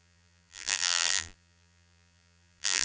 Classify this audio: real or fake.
fake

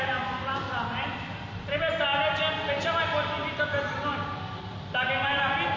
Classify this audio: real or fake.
real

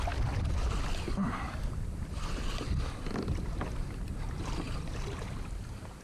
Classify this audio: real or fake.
real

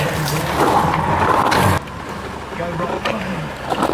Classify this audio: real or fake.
real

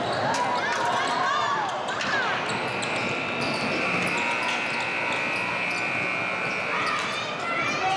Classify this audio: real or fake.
real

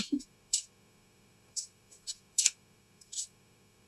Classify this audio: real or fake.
fake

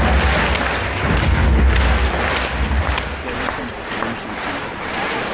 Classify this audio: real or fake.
real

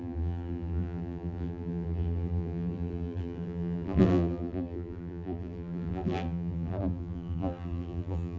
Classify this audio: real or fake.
fake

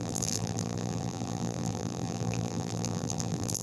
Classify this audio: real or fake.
fake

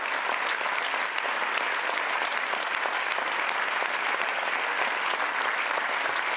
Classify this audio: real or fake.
real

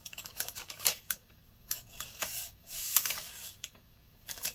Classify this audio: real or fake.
fake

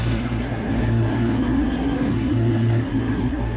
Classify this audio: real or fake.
fake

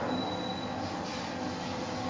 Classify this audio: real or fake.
real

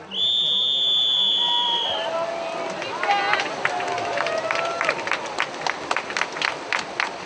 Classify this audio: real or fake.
real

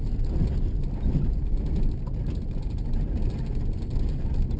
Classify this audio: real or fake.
real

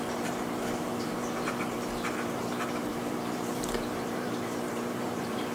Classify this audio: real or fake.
fake